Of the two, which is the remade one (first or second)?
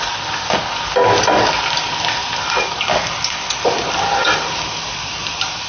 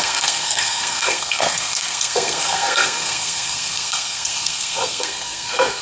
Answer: second